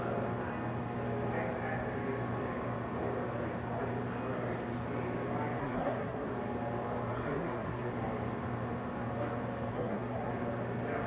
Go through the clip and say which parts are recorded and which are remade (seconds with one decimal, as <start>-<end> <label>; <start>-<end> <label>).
0.0-5.6 recorded; 5.6-6.3 remade; 6.3-7.1 recorded; 7.1-7.9 remade; 7.9-9.7 recorded; 9.7-10.3 remade; 10.3-11.1 recorded